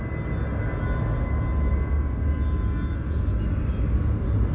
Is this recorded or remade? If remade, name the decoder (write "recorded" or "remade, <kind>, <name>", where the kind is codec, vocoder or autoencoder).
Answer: recorded